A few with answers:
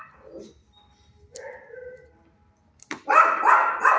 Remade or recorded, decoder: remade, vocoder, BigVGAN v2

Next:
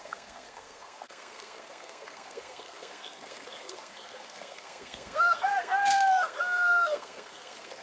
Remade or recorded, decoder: remade, codec, SNAC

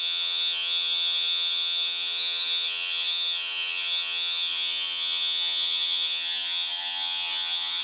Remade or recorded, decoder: remade, vocoder, HiFi-GAN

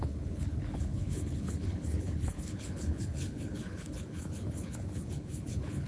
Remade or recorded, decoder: remade, codec, HILCodec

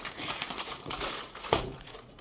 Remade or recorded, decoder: remade, vocoder, Vocos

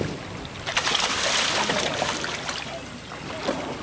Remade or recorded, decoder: recorded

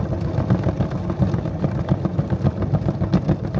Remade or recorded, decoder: recorded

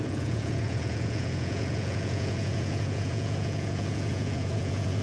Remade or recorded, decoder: remade, vocoder, Vocos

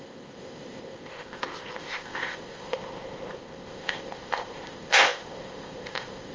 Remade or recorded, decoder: remade, codec, ZipCodec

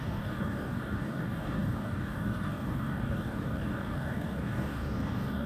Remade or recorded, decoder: remade, codec, DAC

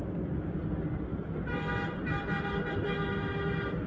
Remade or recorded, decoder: recorded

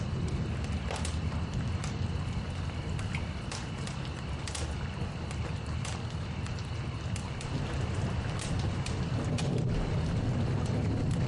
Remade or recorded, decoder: recorded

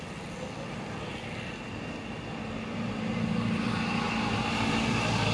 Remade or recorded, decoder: recorded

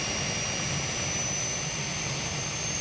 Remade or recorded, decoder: recorded